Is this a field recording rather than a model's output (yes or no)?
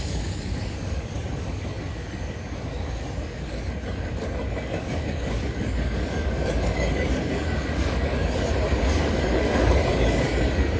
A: no